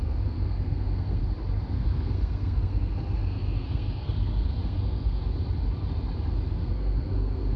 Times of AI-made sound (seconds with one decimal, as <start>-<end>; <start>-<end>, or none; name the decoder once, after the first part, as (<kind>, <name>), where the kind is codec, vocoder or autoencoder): 0.0-1.2 (codec, SNAC); 1.7-5.2; 6.3-7.6